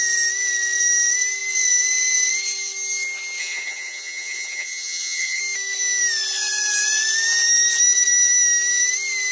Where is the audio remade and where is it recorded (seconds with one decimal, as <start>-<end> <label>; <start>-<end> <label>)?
0.0-3.4 recorded; 3.4-5.4 remade; 5.4-9.3 recorded